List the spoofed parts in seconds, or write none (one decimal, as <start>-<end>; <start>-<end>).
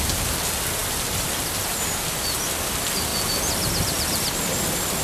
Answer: none